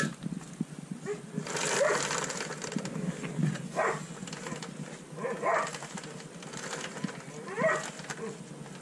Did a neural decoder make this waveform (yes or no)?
no